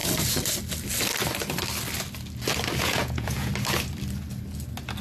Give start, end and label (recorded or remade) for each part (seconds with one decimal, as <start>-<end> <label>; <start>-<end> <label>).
0.0-2.8 recorded; 2.8-3.5 remade; 3.5-5.0 recorded

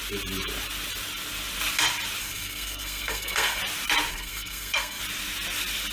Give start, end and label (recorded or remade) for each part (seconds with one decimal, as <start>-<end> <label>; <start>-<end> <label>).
0.0-2.2 recorded; 2.2-3.6 remade; 3.6-4.1 recorded; 4.1-5.0 remade; 5.0-5.9 recorded